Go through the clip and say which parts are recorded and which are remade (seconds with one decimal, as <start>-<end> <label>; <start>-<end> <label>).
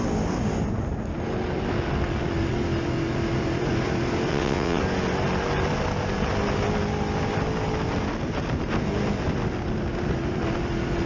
0.0-4.3 recorded; 4.3-4.8 remade; 4.8-11.1 recorded